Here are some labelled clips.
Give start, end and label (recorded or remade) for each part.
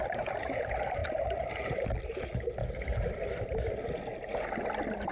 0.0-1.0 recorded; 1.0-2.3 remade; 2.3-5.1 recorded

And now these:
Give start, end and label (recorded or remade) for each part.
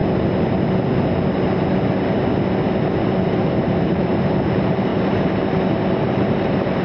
0.0-3.3 recorded; 3.3-4.9 remade; 4.9-6.0 recorded; 6.0-6.8 remade